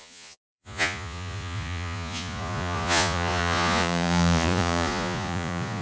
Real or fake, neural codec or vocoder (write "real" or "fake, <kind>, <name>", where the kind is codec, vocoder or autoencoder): fake, vocoder, Vocos